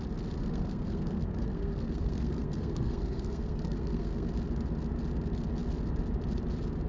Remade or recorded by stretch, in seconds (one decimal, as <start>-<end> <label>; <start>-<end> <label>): 0.0-0.4 recorded; 0.4-4.3 remade; 4.3-6.9 recorded